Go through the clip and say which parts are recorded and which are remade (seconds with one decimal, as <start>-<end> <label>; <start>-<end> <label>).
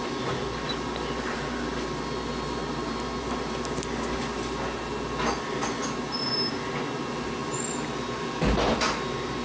0.0-9.4 recorded